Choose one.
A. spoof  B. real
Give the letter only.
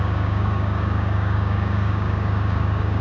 A